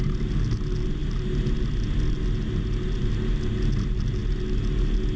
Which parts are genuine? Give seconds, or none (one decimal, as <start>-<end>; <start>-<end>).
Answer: 0.0-5.2

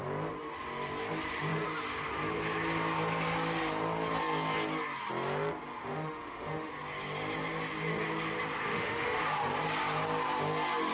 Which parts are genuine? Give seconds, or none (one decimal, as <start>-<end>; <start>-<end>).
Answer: 0.0-5.8; 6.7-8.7; 9.2-10.9

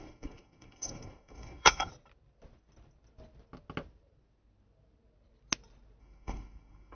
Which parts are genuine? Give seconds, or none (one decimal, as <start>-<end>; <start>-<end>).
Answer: 1.9-6.0

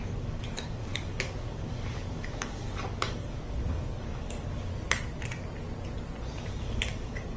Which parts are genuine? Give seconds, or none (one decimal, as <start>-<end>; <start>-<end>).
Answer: 4.7-6.4

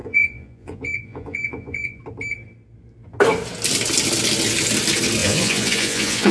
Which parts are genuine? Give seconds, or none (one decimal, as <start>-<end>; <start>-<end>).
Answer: 2.0-5.2